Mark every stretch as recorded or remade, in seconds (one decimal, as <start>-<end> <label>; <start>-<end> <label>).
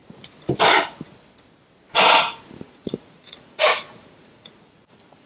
0.0-2.5 recorded; 2.5-5.3 remade